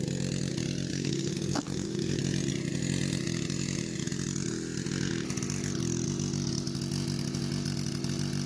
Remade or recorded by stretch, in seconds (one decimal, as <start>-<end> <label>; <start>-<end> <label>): 0.0-0.9 recorded; 0.9-2.2 remade; 2.2-8.5 recorded